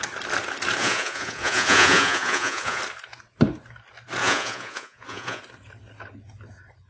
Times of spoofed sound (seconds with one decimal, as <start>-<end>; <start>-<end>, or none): 0.8-2.8; 4.2-5.4